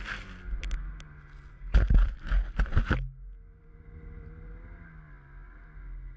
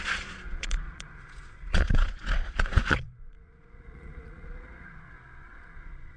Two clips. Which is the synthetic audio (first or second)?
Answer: second